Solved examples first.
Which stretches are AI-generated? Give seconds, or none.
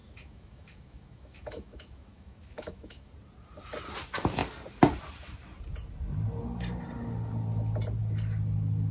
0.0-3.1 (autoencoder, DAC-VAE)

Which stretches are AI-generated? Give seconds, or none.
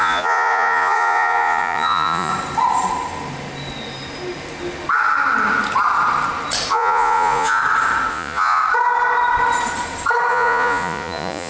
0.0-2.3 (vocoder, Vocos); 6.7-7.6; 8.1-8.6; 10.3-11.5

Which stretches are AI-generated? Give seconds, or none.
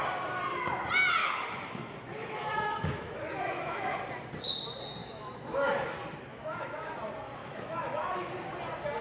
1.2-4.0 (autoencoder, DAC-VAE); 5.0-5.7; 6.3-6.9; 7.4-8.3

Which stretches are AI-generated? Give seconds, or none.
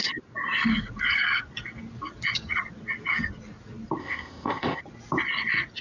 4.0-4.8 (codec, ZipCodec)